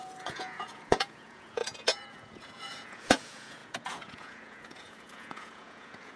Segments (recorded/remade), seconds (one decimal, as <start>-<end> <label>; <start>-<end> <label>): 0.0-6.2 remade

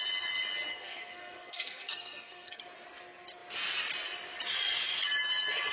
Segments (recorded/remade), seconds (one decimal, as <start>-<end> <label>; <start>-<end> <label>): 0.0-0.7 recorded; 0.7-2.6 remade; 2.6-5.7 recorded

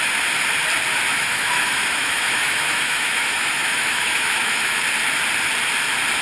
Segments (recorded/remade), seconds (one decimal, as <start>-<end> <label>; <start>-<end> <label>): 0.0-1.1 recorded; 1.1-4.8 remade; 4.8-6.2 recorded

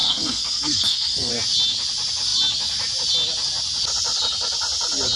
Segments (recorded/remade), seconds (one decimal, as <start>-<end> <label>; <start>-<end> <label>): 0.0-1.3 remade; 1.3-5.2 recorded

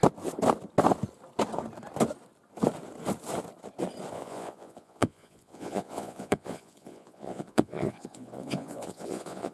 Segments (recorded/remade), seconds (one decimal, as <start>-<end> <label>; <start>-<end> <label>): 0.0-4.1 recorded; 4.1-9.5 remade

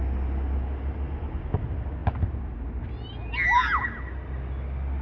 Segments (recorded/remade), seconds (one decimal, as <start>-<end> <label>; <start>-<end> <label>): 0.0-5.0 recorded

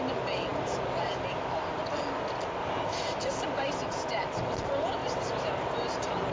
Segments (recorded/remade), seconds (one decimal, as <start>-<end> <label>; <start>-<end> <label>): 0.0-6.3 recorded